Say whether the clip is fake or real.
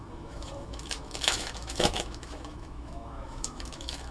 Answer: fake